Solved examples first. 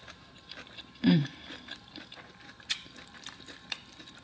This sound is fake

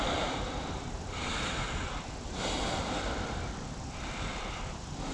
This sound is real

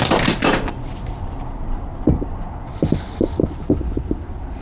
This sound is fake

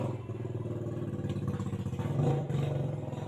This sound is real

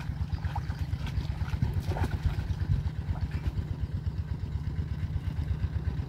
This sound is real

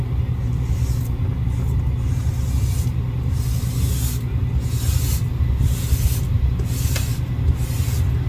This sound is real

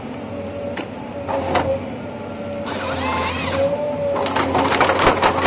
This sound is real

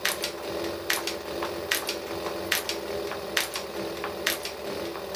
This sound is real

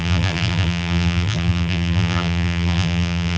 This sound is fake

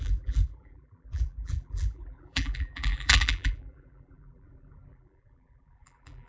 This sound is fake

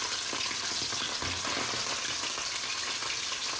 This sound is real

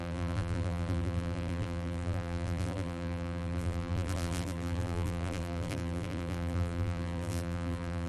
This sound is fake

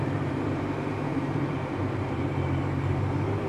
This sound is fake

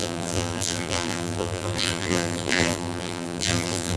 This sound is fake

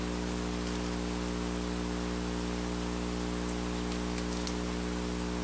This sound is real